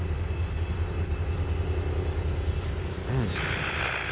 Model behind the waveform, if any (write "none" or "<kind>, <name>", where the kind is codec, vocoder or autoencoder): none